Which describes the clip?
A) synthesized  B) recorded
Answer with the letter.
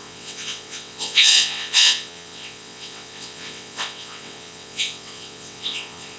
A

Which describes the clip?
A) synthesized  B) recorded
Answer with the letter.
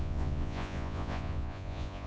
A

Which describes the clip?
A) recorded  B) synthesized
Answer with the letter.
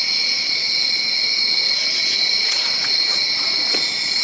B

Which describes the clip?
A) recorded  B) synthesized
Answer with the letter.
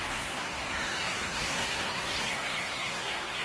B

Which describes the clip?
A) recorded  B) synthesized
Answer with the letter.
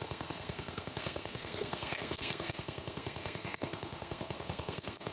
B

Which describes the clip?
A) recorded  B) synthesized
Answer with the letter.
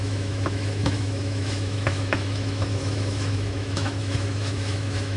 B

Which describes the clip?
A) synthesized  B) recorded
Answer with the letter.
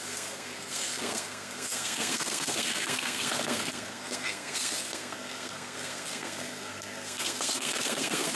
A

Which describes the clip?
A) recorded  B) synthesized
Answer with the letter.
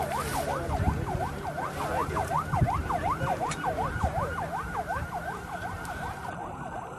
B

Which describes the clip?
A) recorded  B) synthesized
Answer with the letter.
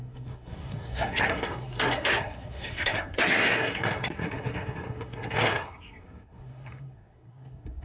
B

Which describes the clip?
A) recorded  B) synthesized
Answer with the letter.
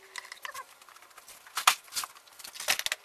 A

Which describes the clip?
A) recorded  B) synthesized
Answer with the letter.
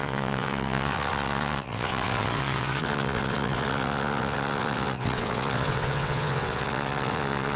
B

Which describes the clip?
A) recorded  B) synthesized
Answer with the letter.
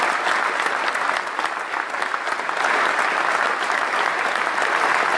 A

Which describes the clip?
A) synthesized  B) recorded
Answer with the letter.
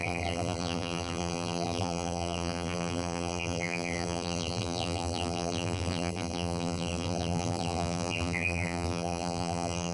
A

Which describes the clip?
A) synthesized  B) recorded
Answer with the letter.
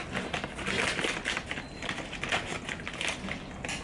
B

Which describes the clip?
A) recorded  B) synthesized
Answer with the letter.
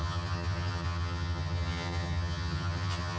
B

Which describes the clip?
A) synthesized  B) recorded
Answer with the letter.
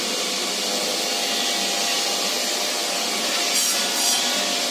B